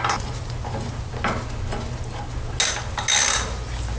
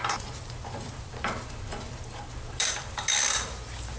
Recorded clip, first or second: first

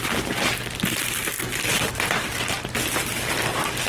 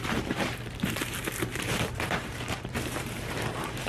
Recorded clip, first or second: first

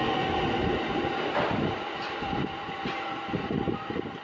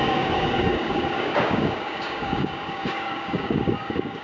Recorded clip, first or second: first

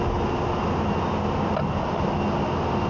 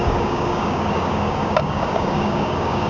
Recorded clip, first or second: first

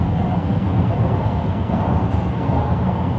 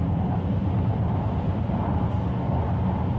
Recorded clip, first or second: second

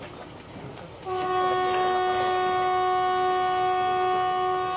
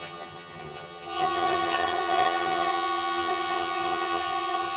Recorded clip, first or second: first